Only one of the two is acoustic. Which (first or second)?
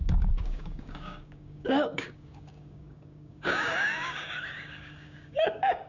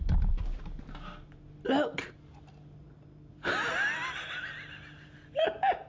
second